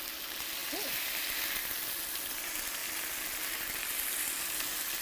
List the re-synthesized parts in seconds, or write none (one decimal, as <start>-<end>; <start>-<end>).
none